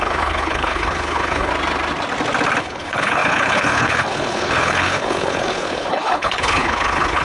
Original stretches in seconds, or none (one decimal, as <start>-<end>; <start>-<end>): 1.5-2.6